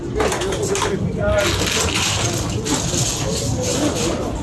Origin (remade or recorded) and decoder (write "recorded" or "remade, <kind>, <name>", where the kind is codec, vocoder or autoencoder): recorded